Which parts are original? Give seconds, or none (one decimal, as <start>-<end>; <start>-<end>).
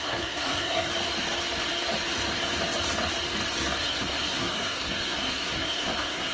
0.9-3.8